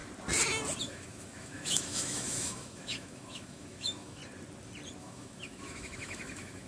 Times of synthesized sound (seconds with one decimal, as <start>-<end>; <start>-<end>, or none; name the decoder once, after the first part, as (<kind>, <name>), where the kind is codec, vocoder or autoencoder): 0.8-4.2 (autoencoder, DAC-VAE); 5.0-6.7